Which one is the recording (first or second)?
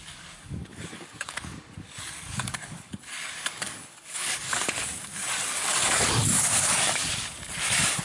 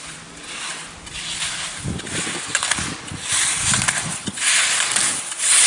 second